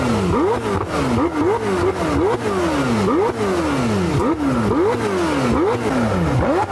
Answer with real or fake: real